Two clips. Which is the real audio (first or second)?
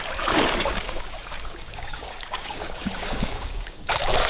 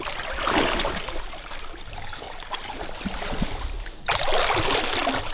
second